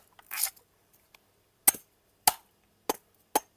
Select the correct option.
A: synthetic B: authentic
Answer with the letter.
B